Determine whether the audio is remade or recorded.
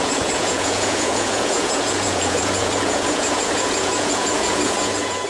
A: remade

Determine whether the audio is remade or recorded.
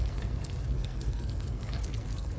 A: remade